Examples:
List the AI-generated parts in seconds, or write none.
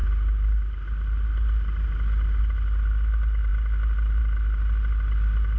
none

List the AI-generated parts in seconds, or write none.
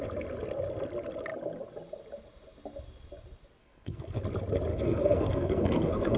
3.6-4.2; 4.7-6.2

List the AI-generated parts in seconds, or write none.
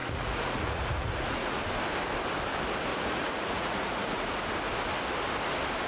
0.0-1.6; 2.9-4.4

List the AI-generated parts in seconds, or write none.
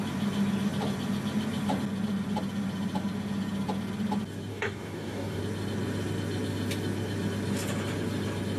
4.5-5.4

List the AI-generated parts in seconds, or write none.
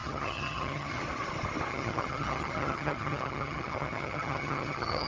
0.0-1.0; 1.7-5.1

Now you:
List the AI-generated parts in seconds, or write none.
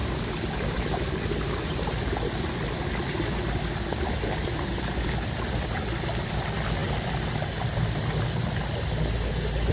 none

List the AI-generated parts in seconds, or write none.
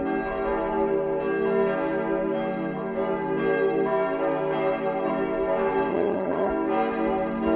5.9-6.5